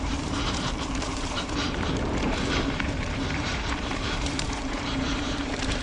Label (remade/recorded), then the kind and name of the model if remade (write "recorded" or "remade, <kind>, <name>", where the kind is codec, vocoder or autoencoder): remade, vocoder, BigVGAN v2